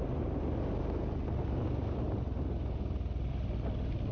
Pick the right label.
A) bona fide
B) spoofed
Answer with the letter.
A